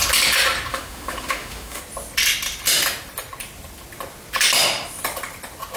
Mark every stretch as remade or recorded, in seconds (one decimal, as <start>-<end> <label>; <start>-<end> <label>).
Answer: 0.0-0.7 recorded; 0.7-1.8 remade; 1.8-5.8 recorded